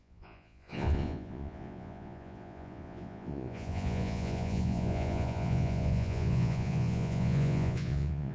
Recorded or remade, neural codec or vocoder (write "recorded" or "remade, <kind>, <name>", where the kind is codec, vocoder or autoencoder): remade, vocoder, Vocos